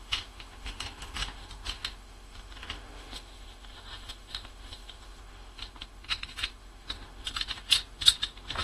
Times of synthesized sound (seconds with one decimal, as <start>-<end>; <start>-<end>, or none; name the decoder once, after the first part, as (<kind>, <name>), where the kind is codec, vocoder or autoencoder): 0.0-8.6 (autoencoder, DAC-VAE)